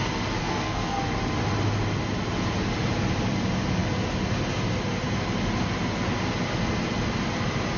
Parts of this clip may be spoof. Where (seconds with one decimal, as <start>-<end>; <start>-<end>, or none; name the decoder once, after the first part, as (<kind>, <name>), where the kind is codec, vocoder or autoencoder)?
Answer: 0.4-1.0 (codec, SNAC)